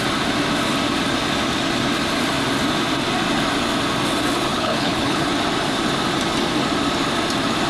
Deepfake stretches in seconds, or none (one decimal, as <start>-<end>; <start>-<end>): 4.5-5.3